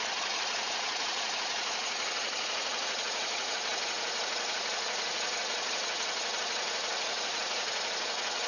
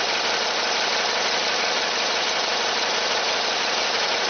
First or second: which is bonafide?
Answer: second